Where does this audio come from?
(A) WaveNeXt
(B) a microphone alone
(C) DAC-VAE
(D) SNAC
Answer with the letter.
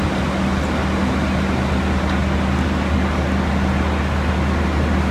B